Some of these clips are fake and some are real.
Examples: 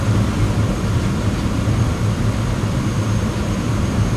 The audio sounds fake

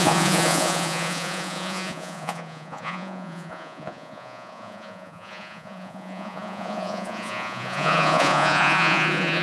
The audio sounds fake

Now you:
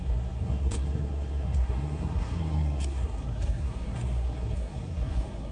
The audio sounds fake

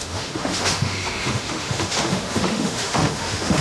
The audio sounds fake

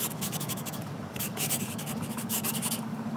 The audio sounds fake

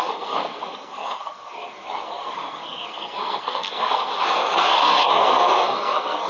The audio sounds fake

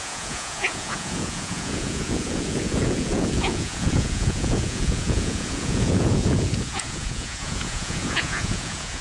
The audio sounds fake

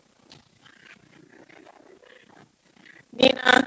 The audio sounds real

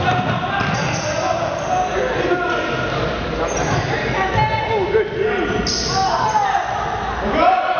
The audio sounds real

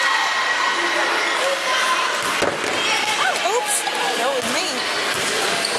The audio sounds real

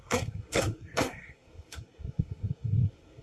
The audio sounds fake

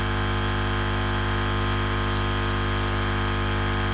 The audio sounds real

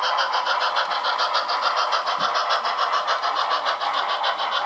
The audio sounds real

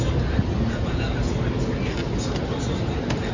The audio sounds real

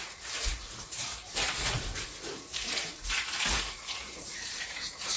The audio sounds fake